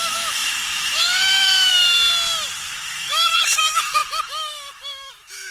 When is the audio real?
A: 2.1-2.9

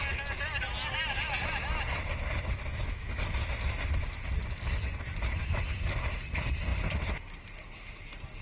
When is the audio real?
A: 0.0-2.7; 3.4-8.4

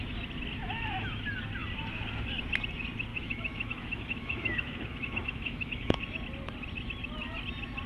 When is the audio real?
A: 0.0-3.1; 6.0-7.9